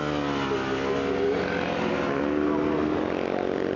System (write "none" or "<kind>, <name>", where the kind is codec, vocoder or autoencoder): none